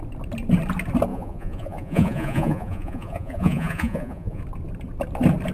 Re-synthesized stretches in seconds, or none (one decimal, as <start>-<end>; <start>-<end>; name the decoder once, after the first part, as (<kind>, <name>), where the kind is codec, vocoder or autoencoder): 1.1-4.4 (vocoder, Vocos)